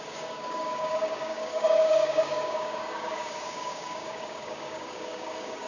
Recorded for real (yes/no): no